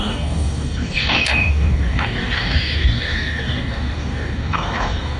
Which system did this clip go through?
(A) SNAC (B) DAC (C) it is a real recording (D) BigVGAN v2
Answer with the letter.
B